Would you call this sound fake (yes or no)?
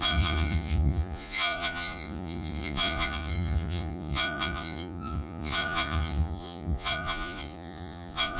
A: yes